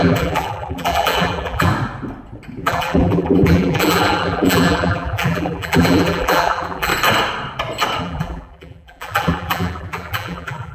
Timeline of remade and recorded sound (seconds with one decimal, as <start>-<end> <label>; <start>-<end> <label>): 0.0-1.7 remade; 1.7-2.6 recorded; 2.6-6.9 remade; 6.9-8.0 recorded; 8.0-10.7 remade